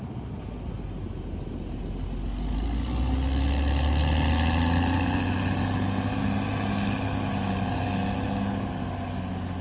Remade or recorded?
recorded